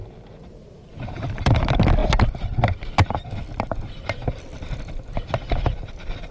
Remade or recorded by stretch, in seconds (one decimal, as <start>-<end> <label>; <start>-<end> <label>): 0.0-2.0 remade; 2.0-3.4 recorded; 3.4-6.3 remade